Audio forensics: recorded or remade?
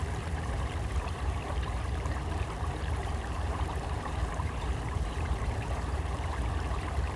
remade